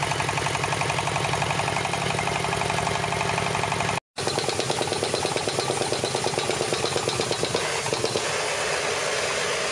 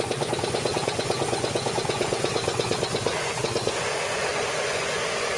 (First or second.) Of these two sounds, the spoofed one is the second